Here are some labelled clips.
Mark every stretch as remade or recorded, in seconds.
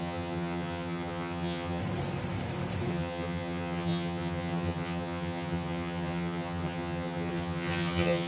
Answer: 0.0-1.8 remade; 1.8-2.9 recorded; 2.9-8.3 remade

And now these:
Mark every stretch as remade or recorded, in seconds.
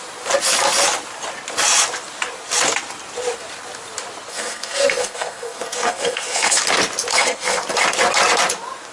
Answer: 0.0-4.3 recorded; 4.3-6.6 remade; 6.6-7.1 recorded; 7.1-7.6 remade; 7.6-8.9 recorded